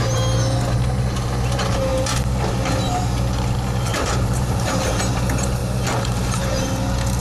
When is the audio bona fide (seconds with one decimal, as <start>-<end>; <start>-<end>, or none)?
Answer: 0.0-3.9; 5.0-5.6; 6.4-7.2